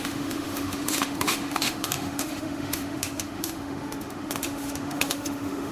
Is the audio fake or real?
fake